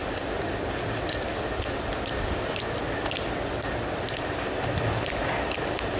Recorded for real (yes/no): yes